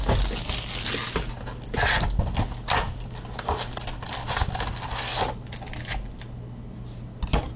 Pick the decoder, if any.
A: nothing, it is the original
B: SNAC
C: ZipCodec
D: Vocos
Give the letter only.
A